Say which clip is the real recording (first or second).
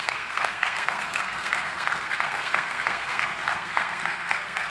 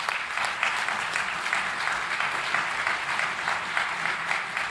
second